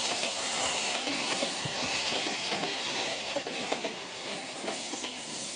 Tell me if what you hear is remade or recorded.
remade